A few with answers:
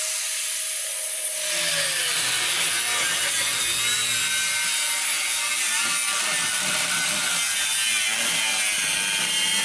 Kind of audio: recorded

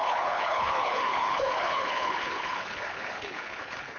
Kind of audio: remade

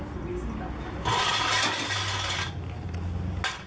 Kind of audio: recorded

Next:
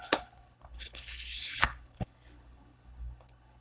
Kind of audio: remade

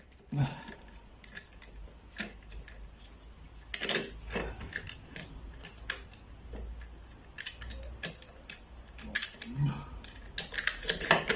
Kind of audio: recorded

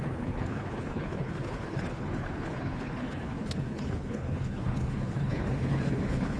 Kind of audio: remade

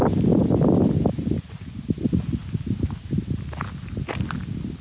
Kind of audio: recorded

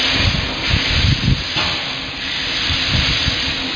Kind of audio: recorded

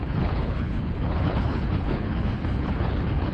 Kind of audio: remade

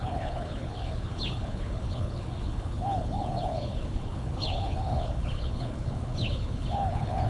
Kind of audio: remade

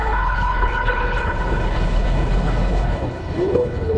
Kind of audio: remade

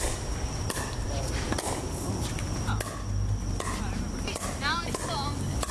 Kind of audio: recorded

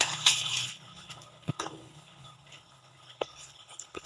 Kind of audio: remade